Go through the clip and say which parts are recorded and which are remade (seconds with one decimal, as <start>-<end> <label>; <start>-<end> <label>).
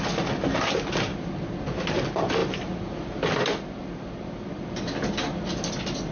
0.0-2.4 recorded; 2.4-3.8 remade; 3.8-6.1 recorded